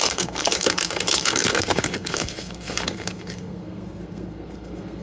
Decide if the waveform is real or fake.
fake